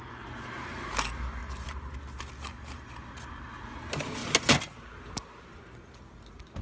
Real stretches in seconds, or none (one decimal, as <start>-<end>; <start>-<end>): 0.0-6.6